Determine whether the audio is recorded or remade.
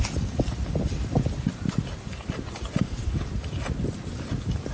recorded